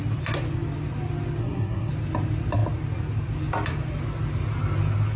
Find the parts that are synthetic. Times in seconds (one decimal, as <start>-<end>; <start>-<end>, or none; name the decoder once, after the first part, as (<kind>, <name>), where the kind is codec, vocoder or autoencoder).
1.4-1.9 (codec, SNAC)